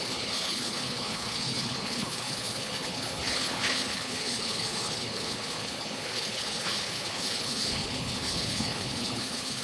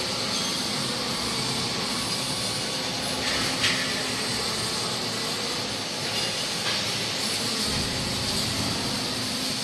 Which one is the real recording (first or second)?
second